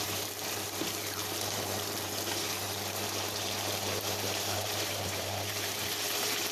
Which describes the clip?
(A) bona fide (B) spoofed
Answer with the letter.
B